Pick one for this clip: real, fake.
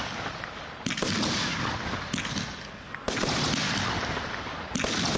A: real